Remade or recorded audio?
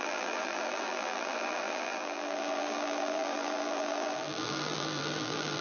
remade